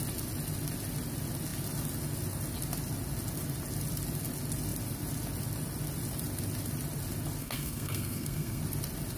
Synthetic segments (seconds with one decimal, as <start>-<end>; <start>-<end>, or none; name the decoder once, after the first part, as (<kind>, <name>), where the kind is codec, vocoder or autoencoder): 7.4-8.6 (codec, SNAC)